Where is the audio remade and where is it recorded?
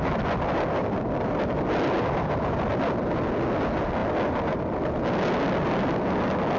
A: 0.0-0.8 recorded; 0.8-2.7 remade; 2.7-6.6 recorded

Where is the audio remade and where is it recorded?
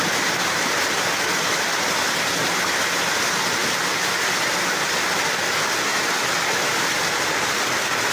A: 0.0-1.7 remade; 1.7-8.1 recorded